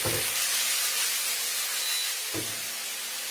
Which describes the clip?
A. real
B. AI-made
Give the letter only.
A